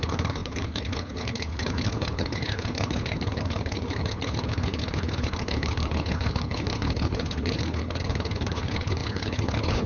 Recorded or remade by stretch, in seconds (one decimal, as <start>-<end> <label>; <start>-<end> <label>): 0.0-9.9 remade